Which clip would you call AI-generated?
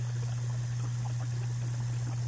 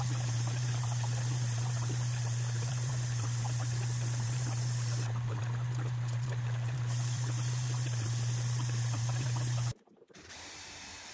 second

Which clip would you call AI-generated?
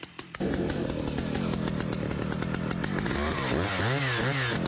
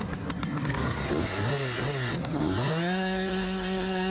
second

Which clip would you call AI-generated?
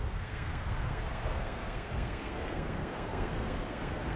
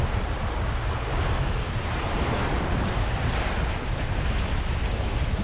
first